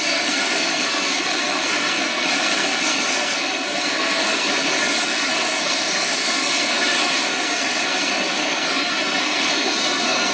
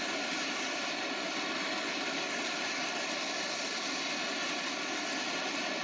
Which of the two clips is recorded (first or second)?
second